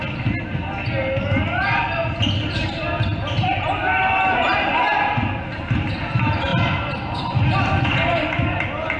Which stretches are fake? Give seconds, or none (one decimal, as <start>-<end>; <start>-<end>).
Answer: none